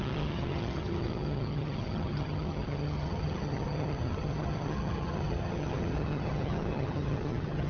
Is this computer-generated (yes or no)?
yes